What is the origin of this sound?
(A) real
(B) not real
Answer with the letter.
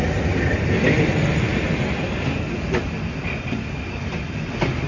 A